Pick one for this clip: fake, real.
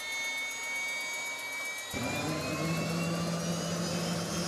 real